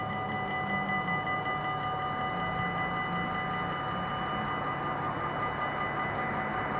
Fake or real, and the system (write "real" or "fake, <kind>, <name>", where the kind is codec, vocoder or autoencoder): real